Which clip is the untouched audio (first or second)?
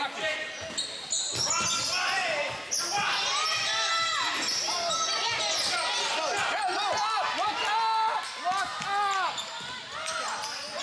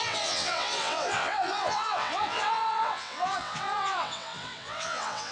first